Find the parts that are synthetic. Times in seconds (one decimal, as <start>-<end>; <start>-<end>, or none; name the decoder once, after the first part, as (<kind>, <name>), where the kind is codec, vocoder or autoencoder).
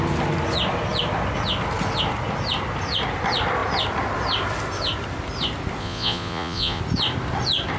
5.8-6.8 (vocoder, Vocos)